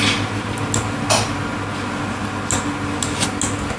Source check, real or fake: real